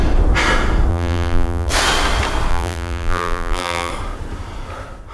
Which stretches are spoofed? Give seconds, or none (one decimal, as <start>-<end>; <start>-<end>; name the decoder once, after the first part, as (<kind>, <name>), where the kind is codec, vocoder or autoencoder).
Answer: 0.9-1.7 (vocoder, BigVGAN v2); 2.5-3.9